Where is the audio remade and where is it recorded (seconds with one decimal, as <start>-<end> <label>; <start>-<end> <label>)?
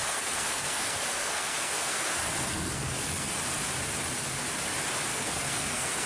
0.0-3.3 remade; 3.3-5.1 recorded; 5.1-6.1 remade